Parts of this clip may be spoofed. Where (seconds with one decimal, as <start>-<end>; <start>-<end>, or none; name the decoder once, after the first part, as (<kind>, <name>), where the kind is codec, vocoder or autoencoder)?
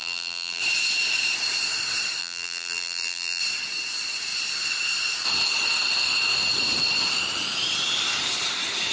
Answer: 0.0-0.6 (vocoder, BigVGAN v2); 2.2-3.4